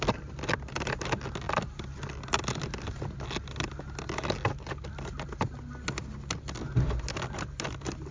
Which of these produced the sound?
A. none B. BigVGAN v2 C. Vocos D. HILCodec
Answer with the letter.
A